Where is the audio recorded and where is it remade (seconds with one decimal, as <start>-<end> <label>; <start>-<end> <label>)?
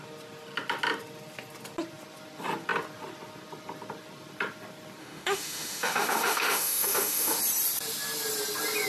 0.0-5.0 recorded; 5.0-7.4 remade; 7.4-8.9 recorded